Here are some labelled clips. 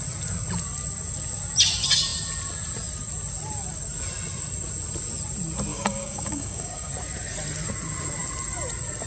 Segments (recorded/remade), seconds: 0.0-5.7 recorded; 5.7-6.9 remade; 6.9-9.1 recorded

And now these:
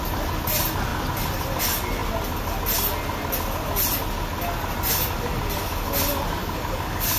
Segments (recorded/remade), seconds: 0.0-6.4 recorded; 6.4-7.2 remade

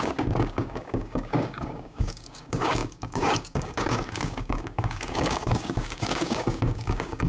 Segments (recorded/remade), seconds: 0.0-7.3 remade